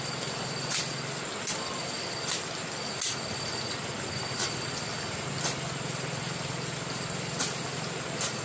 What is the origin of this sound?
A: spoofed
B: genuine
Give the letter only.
B